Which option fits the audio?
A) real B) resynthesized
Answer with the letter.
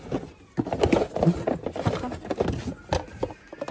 A